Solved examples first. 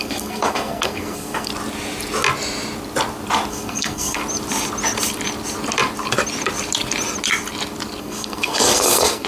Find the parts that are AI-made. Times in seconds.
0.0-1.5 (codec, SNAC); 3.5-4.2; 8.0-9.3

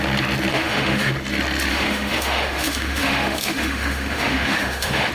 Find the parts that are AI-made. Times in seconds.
0.5-1.1 (autoencoder, DAC-VAE); 1.7-5.1

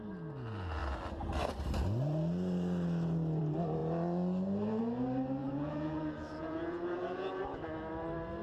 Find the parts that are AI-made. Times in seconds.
5.4-7.4 (vocoder, Vocos)

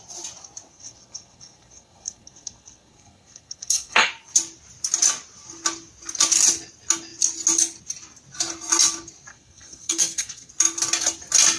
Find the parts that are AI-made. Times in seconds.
0.7-4.1 (codec, SNAC); 9.3-10.5

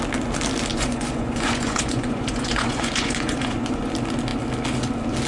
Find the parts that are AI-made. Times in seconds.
0.7-3.9 (vocoder, Vocos)

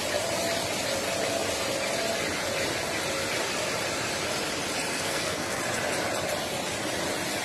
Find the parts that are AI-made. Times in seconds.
4.9-5.6 (codec, SNAC)

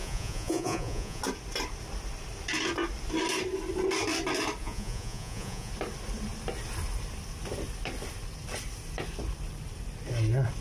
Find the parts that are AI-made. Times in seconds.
0.0-1.2 (vocoder, Vocos); 4.6-5.7